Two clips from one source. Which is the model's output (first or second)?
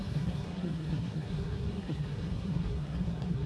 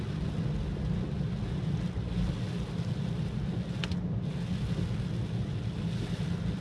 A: first